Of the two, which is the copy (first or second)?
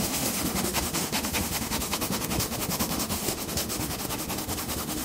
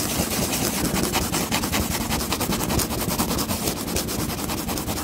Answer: first